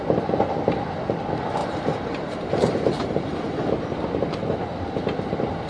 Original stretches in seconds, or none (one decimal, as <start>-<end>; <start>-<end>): 0.0-1.6; 3.7-5.7